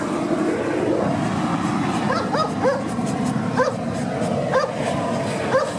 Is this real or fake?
real